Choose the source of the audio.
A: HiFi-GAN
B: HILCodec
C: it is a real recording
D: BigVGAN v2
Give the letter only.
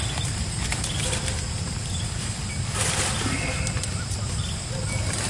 C